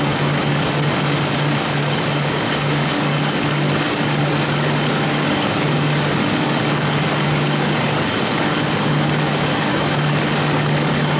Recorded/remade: remade